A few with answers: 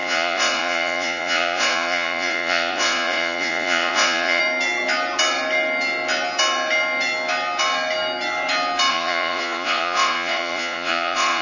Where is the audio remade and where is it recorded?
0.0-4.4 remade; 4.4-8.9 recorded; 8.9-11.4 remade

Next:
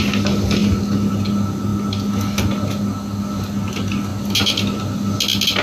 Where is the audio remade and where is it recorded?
0.0-5.6 recorded

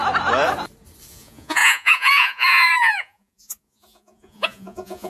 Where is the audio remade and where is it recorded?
0.0-1.1 recorded; 1.1-5.1 remade